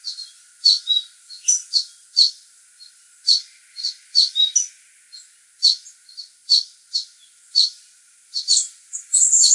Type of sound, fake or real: real